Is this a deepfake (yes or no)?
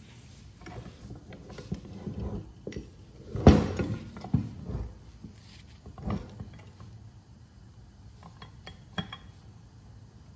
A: no